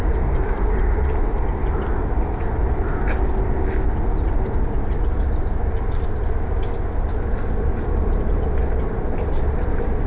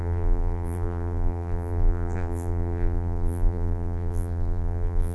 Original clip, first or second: first